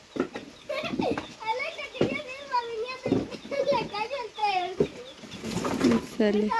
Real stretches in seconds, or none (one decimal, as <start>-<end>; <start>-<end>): 0.0-1.5; 2.6-4.4; 6.1-6.6